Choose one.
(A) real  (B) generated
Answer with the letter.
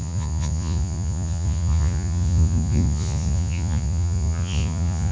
B